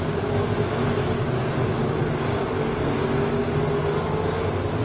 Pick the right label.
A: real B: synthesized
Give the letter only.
A